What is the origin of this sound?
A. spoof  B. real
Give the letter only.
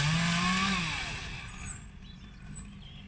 B